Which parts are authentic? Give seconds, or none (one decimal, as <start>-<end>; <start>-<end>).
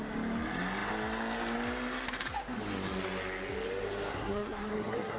0.0-4.1